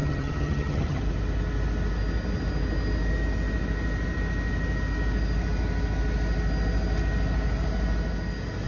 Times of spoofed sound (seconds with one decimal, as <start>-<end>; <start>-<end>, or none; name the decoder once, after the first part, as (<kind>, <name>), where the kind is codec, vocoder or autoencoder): 0.0-1.0 (vocoder, HiFi-GAN)